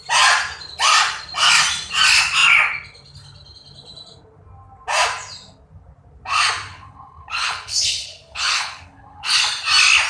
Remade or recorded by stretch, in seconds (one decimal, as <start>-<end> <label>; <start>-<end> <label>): 0.0-6.7 recorded; 6.7-9.3 remade; 9.3-10.1 recorded